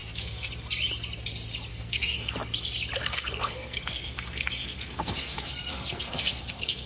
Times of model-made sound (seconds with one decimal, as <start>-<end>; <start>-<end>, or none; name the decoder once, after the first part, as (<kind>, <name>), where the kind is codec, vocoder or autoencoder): 0.0-0.5 (codec, SNAC); 1.7-2.3; 3.0-6.9